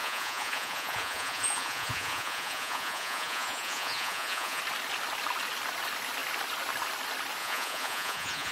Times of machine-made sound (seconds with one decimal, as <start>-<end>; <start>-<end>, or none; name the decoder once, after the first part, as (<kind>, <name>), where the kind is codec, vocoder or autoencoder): 0.0-4.6 (vocoder, Vocos); 7.4-8.5